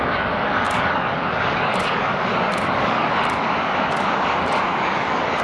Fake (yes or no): yes